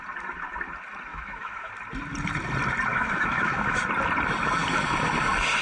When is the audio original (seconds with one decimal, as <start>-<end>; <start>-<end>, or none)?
0.0-1.1; 1.7-2.9; 3.8-5.6